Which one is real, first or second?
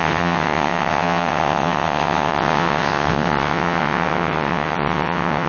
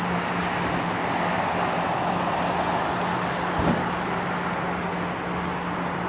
second